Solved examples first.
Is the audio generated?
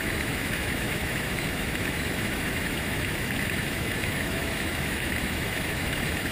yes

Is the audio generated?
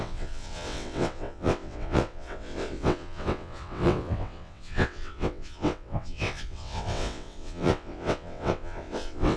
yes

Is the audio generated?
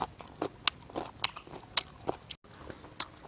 no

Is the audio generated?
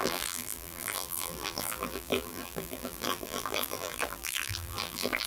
yes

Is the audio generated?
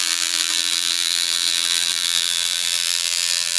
yes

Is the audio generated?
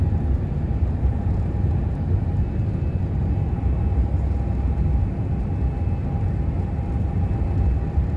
no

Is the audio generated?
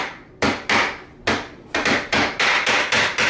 no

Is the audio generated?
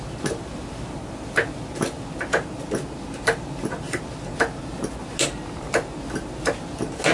no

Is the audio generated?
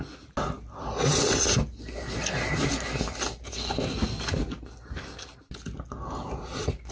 no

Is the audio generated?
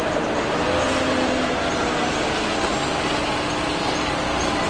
no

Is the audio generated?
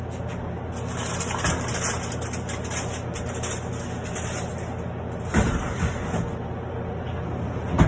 no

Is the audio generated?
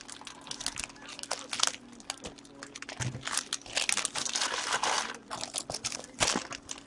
no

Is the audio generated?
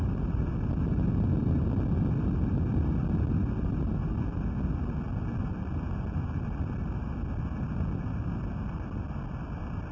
no